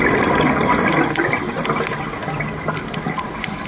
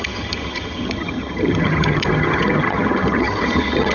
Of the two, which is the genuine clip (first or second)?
first